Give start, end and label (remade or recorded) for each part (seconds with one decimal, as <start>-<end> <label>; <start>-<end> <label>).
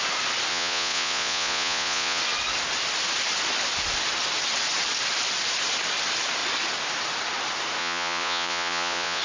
0.0-0.5 recorded; 0.5-2.2 remade; 2.2-7.8 recorded; 7.8-9.2 remade